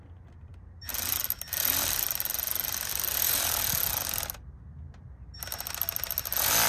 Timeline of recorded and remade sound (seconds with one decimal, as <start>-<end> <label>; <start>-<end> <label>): 0.0-6.7 recorded